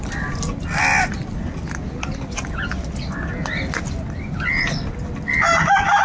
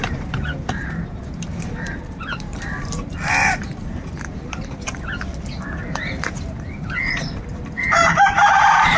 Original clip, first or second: first